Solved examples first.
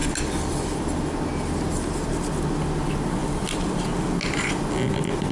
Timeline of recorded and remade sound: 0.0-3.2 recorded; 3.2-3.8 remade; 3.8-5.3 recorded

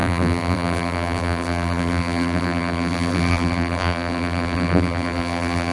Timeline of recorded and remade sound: 0.0-5.7 remade

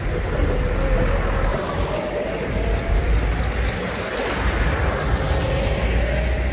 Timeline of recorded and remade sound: 0.0-1.5 recorded; 1.5-3.1 remade; 3.1-6.5 recorded

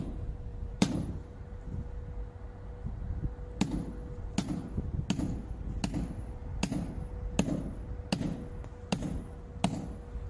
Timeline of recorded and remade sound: 0.0-0.5 recorded; 0.5-1.4 remade; 1.4-10.3 recorded

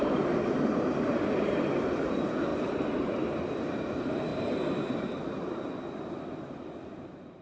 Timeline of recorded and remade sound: 0.0-2.5 recorded; 2.5-3.4 remade; 3.4-4.3 recorded; 4.3-7.4 remade

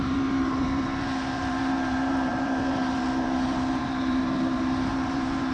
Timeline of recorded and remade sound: 0.0-5.5 remade

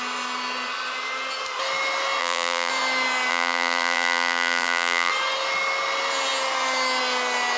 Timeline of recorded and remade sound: 0.0-2.2 recorded; 2.2-2.7 remade; 2.7-3.3 recorded; 3.3-5.1 remade; 5.1-7.6 recorded

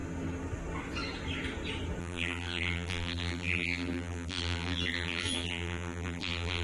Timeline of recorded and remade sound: 0.0-2.0 recorded; 2.0-6.6 remade